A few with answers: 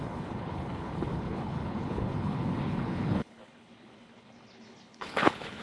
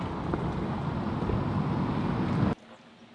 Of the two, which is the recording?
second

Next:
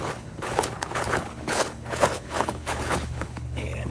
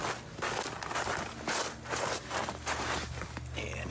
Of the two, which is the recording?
second